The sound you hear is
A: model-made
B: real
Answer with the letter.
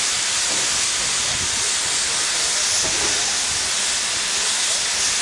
B